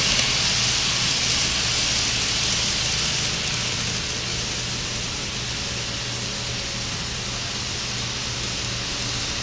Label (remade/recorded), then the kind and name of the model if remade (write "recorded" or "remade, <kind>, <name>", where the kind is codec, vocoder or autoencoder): recorded